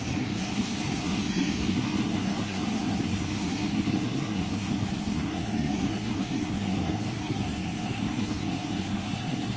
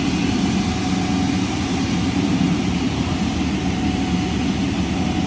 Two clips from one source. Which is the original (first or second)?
second